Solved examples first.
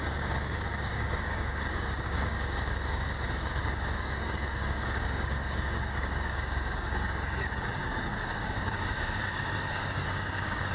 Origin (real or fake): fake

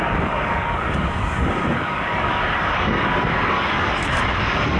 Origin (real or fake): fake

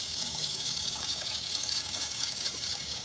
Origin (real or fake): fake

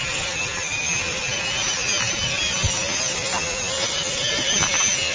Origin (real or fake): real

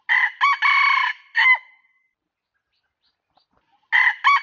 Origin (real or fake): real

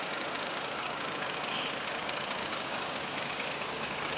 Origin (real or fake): fake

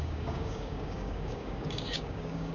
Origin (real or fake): fake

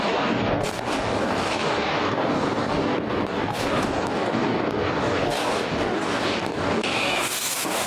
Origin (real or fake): fake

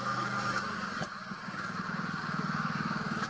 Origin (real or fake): fake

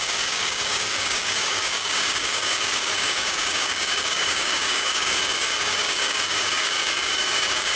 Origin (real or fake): fake